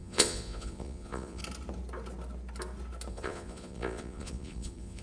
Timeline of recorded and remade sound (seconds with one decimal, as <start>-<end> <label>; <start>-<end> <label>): 0.0-1.4 remade; 1.4-3.1 recorded; 3.1-5.0 remade